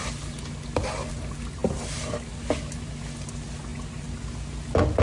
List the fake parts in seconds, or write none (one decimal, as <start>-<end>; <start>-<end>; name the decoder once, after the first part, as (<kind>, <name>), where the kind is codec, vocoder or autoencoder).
none